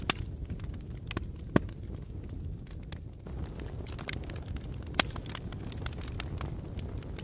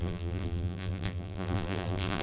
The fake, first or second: second